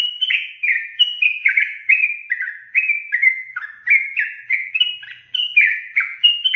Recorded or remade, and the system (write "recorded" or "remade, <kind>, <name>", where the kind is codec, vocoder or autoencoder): remade, vocoder, BigVGAN v2